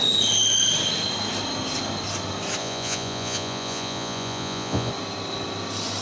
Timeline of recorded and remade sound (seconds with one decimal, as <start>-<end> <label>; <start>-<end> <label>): 0.0-2.6 recorded; 2.6-4.9 remade; 4.9-6.0 recorded